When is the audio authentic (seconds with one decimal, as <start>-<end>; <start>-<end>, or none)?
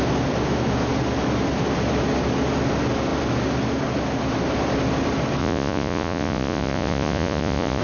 0.0-5.4